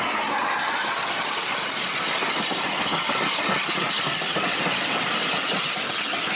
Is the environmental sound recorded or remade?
recorded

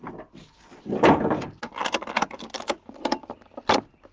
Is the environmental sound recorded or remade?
recorded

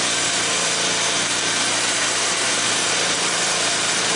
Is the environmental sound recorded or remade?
remade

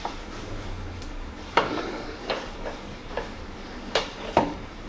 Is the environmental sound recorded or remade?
remade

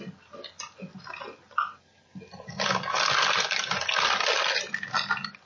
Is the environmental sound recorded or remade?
recorded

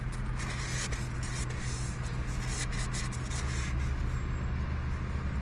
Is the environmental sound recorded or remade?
recorded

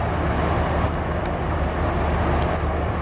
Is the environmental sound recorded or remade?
recorded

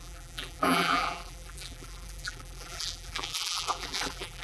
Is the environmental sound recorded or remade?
remade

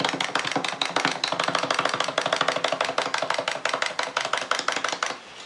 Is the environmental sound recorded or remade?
recorded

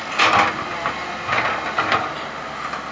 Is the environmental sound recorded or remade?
recorded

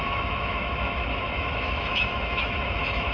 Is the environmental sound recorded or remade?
remade